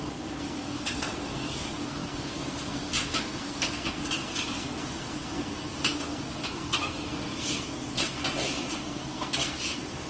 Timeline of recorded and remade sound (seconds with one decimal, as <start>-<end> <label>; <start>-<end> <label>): 0.0-10.1 remade